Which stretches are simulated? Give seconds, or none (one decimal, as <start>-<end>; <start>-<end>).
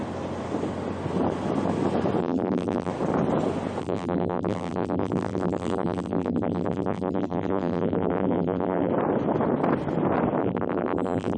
2.2-2.9; 3.8-8.9; 10.4-11.4